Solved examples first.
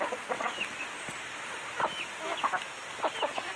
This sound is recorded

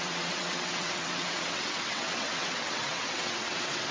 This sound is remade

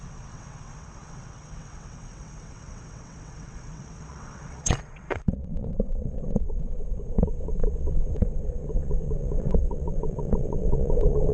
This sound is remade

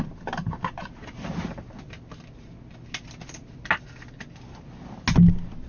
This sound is recorded